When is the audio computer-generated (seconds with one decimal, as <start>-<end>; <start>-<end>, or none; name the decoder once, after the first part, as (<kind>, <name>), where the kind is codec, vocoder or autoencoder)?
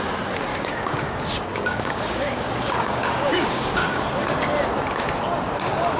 0.5-4.0 (codec, DAC)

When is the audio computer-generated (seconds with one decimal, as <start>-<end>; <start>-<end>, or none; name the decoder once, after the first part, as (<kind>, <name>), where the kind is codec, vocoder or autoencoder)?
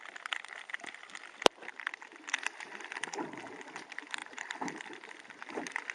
4.2-5.4 (vocoder, BigVGAN v2)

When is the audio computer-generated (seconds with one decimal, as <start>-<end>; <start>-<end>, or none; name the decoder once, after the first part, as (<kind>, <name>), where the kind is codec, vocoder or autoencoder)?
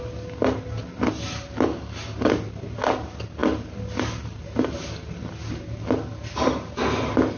none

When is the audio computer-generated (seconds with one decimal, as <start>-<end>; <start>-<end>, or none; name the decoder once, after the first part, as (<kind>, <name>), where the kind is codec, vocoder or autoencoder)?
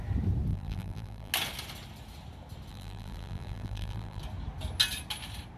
0.5-1.3 (vocoder, BigVGAN v2); 2.7-4.2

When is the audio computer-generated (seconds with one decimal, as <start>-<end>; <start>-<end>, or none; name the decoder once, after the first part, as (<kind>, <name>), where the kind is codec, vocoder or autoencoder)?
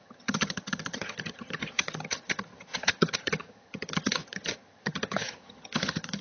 0.0-6.2 (vocoder, HiFi-GAN)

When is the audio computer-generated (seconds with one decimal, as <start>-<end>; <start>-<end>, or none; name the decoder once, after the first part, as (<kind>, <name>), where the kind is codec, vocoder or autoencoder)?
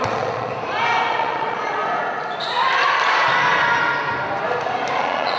0.0-0.5 (vocoder, Vocos); 1.1-1.8; 5.0-5.4